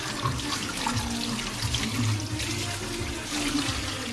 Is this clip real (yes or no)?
yes